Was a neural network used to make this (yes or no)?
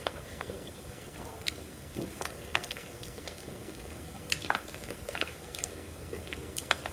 yes